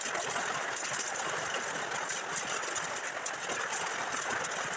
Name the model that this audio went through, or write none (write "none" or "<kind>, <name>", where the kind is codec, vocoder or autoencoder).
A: none